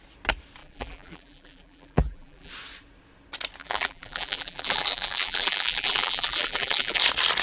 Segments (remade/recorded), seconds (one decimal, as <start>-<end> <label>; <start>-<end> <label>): 0.0-0.6 recorded; 0.6-2.5 remade; 2.5-3.6 recorded; 3.6-7.0 remade; 7.0-7.4 recorded